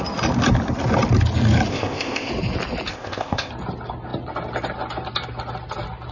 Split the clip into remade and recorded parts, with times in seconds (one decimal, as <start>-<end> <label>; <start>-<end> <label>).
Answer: 0.0-1.7 recorded; 1.7-2.3 remade; 2.3-2.9 recorded; 2.9-3.5 remade; 3.5-6.1 recorded